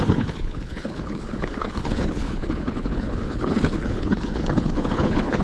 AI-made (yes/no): yes